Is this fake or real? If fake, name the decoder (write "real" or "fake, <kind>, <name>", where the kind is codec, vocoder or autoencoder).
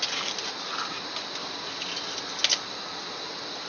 real